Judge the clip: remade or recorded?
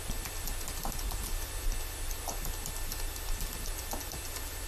recorded